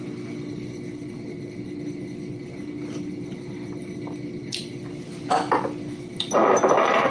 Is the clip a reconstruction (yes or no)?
no